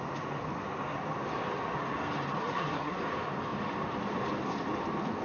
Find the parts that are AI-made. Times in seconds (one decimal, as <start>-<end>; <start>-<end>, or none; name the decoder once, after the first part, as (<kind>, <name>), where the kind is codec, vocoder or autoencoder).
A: 2.4-3.0 (codec, SNAC)